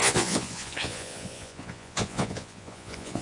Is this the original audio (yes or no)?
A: no